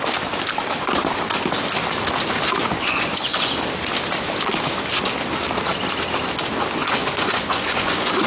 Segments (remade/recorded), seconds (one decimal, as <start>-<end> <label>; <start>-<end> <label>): 0.0-2.6 recorded; 2.6-3.5 remade; 3.5-6.8 recorded; 6.8-8.3 remade